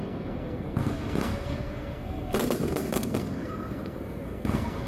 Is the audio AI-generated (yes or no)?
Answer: yes